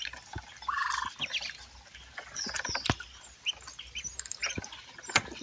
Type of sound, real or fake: real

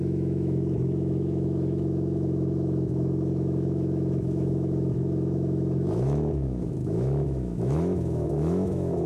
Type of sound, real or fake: fake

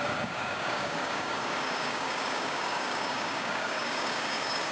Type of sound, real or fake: fake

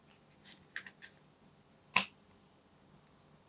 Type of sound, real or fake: real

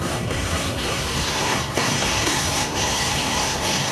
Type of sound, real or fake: fake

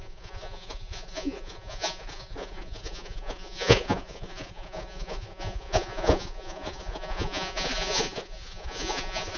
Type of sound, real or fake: fake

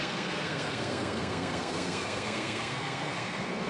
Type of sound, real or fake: fake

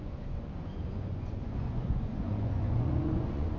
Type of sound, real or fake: fake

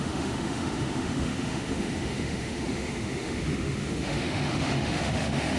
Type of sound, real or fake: fake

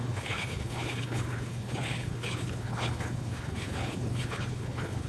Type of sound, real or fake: fake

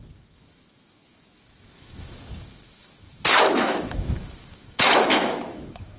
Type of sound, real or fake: fake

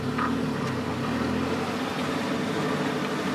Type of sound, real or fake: real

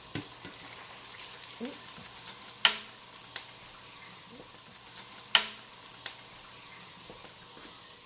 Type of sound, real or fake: real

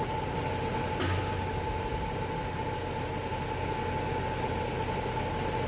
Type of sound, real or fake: real